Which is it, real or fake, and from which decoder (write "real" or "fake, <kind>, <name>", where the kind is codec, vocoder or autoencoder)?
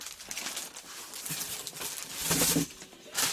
real